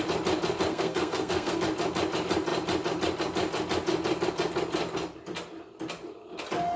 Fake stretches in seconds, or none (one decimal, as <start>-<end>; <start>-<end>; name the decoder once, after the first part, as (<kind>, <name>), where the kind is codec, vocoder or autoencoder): 0.7-1.6 (codec, SNAC)